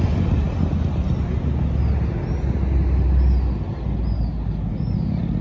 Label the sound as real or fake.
real